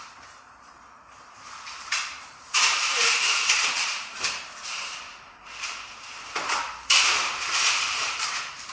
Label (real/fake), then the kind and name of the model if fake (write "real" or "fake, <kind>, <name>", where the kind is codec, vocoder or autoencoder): fake, vocoder, BigVGAN v2